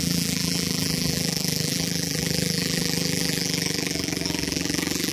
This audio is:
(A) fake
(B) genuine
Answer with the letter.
A